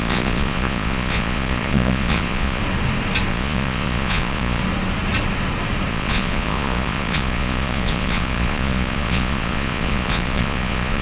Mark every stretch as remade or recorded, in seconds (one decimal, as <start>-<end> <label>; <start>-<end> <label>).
0.0-2.6 remade; 2.6-3.3 recorded; 3.3-4.6 remade; 4.6-5.9 recorded; 5.9-11.0 remade